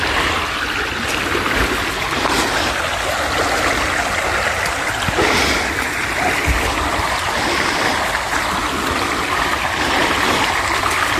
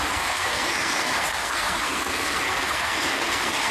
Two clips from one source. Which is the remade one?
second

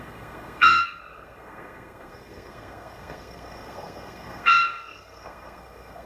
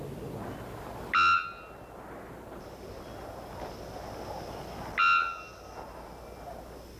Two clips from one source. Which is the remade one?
first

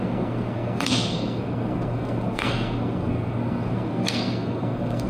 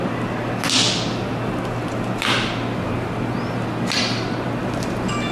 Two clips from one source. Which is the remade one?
first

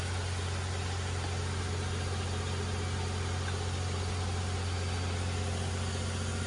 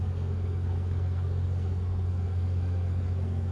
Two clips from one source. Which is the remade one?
second